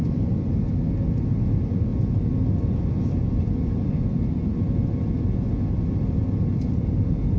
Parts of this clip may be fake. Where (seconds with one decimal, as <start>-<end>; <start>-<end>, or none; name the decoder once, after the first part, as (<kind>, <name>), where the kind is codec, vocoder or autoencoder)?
none